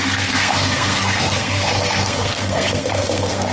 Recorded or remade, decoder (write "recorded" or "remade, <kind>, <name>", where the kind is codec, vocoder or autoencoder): remade, codec, SNAC